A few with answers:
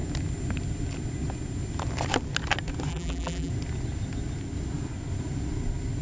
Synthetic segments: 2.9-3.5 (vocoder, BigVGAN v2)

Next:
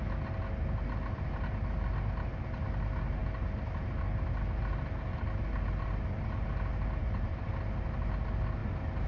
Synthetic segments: 7.0-7.5 (vocoder, BigVGAN v2)

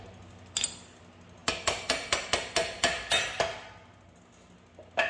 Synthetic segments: none

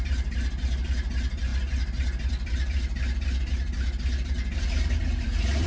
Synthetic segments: none

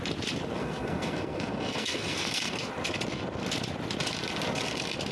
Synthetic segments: 0.6-2.7 (codec, SNAC)

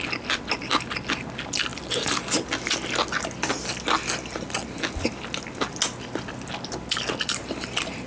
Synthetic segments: none

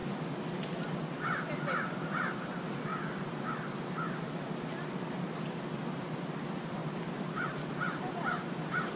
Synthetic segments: 1.0-2.9 (vocoder, BigVGAN v2); 5.8-6.8; 7.8-9.0